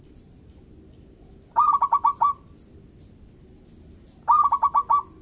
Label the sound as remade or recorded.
recorded